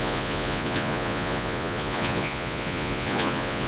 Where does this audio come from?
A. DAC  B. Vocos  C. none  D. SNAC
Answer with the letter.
B